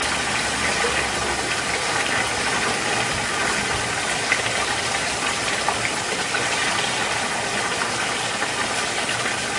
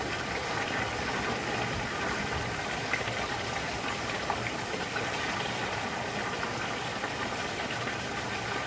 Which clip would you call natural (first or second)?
first